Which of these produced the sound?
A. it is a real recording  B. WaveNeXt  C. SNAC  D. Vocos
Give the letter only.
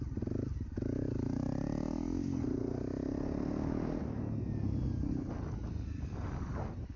A